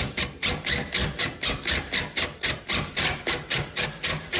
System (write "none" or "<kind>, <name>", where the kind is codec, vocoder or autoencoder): none